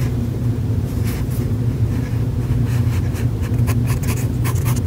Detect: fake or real fake